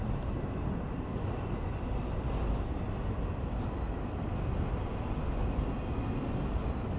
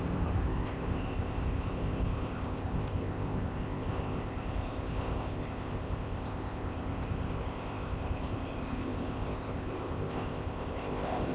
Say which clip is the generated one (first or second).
second